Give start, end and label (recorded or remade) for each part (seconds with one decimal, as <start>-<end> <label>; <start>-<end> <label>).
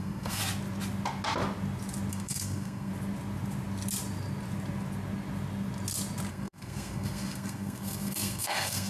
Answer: 0.0-0.4 remade; 0.4-2.1 recorded; 2.1-2.9 remade; 2.9-6.3 recorded; 6.3-8.9 remade